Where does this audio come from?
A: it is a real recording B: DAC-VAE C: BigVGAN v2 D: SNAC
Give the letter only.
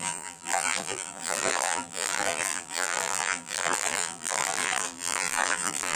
C